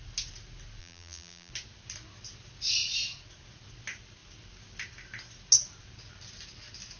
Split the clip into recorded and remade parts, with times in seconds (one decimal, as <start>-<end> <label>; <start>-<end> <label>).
0.0-0.8 recorded; 0.8-1.5 remade; 1.5-7.0 recorded